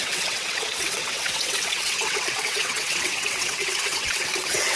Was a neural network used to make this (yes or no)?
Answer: yes